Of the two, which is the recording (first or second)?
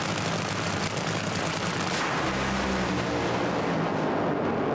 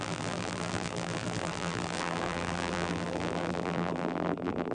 first